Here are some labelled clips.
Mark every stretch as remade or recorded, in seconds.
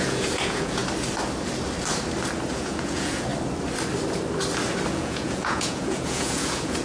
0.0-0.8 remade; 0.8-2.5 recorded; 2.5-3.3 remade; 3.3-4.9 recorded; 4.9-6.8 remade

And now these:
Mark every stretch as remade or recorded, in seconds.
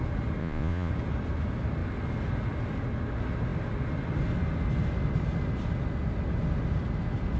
0.0-0.4 recorded; 0.4-0.9 remade; 0.9-7.4 recorded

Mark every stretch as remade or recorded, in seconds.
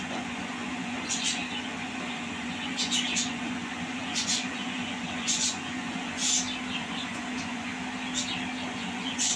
0.0-6.2 remade; 6.2-6.8 recorded; 6.8-7.7 remade; 7.7-8.7 recorded; 8.7-9.4 remade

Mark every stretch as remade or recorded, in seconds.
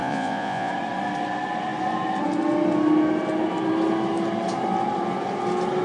0.0-0.7 remade; 0.7-5.8 recorded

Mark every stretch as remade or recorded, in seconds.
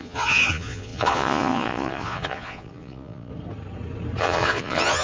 0.0-3.3 remade; 3.3-4.2 recorded; 4.2-5.0 remade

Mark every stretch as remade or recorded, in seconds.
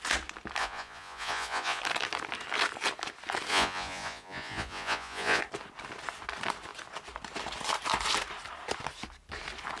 0.0-0.6 recorded; 0.6-1.8 remade; 1.8-3.5 recorded; 3.5-5.4 remade; 5.4-9.8 recorded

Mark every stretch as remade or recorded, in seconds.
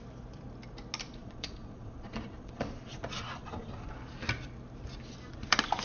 0.0-1.2 recorded; 1.2-3.9 remade; 3.9-5.8 recorded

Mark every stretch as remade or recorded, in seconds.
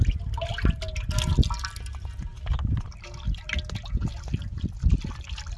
0.0-5.6 recorded